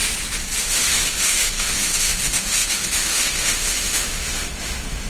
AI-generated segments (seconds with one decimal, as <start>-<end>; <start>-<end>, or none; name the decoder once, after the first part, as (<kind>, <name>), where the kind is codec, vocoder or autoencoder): 0.6-5.1 (autoencoder, DAC-VAE)